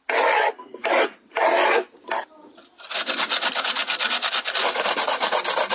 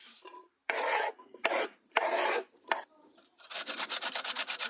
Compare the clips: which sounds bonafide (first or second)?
first